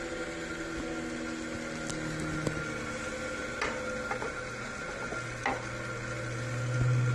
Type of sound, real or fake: real